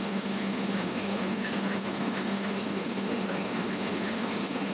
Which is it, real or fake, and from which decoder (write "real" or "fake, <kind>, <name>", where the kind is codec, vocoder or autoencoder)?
fake, autoencoder, DAC-VAE